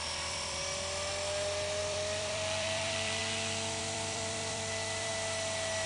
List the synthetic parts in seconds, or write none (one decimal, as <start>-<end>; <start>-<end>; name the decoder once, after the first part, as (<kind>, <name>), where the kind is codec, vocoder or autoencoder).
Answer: 0.0-0.6 (vocoder, BigVGAN v2); 1.8-3.2; 3.8-5.1